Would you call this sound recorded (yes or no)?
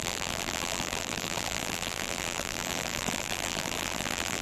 no